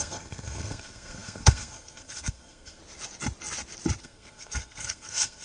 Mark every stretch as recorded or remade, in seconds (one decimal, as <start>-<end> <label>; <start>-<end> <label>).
0.0-2.8 remade; 2.8-4.0 recorded; 4.0-5.4 remade